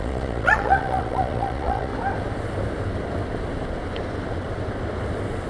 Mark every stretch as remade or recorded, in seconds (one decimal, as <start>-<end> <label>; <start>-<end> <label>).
0.0-1.9 remade; 1.9-5.5 recorded